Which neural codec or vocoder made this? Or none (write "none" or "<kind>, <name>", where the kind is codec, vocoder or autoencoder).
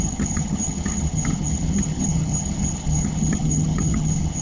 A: vocoder, HiFi-GAN